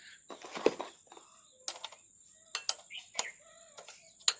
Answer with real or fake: real